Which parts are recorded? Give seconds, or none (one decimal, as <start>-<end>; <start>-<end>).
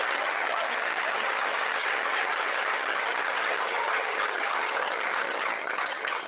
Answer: none